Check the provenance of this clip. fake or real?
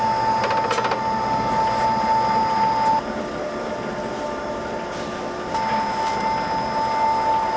real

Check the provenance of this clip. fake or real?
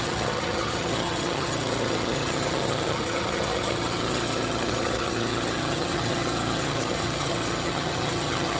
fake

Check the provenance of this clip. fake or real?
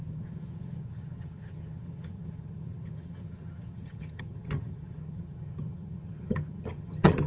fake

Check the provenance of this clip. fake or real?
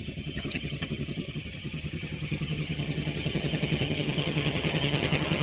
fake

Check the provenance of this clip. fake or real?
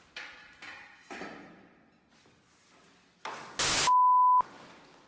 real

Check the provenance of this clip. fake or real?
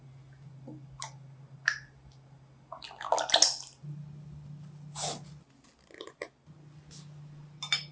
real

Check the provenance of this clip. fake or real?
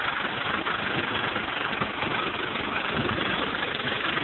real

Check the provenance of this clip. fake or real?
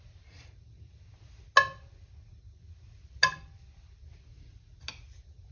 real